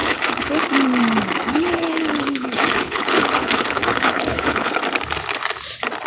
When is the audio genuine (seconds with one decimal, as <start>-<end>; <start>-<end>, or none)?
0.6-1.5; 4.8-6.1